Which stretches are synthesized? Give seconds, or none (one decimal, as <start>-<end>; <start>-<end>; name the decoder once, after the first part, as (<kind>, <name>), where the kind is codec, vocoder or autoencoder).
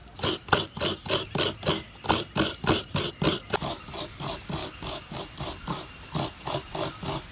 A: 4.6-5.2 (codec, DAC)